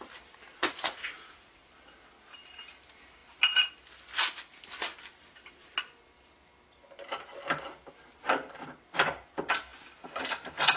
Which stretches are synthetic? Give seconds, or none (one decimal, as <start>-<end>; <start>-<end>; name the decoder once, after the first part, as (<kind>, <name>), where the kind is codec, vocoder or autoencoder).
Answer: 0.6-1.7 (vocoder, Vocos)